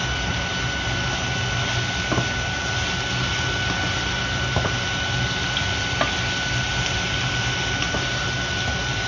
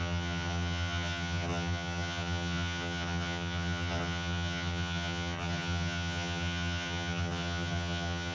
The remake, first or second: second